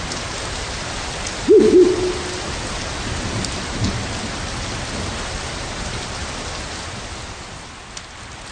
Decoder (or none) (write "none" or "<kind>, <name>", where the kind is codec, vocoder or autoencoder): none